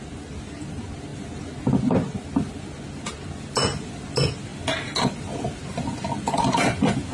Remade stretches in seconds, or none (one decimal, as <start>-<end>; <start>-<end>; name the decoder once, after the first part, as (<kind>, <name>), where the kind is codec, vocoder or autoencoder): none